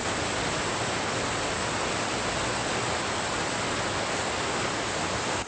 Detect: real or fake real